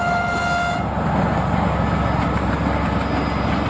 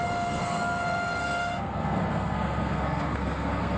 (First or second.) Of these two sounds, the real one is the first